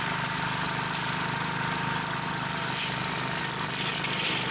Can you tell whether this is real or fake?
real